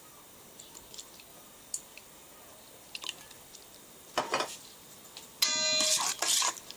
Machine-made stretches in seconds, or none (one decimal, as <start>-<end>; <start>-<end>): 1.3-5.4